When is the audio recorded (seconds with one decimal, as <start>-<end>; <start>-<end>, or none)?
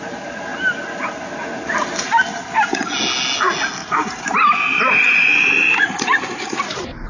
0.0-3.8